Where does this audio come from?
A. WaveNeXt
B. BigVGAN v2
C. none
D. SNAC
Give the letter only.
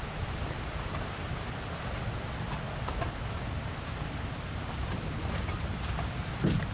C